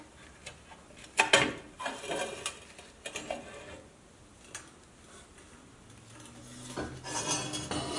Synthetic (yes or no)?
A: no